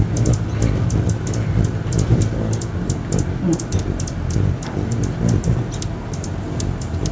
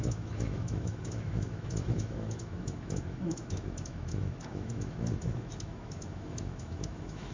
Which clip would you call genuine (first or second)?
first